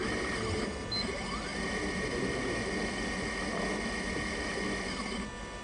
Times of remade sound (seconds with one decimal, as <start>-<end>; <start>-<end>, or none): none